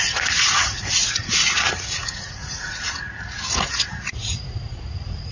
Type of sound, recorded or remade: remade